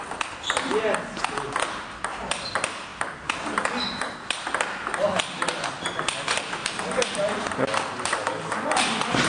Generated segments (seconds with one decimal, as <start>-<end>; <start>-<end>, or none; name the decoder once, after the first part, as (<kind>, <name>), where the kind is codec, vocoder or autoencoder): 6.6-7.4 (vocoder, BigVGAN v2)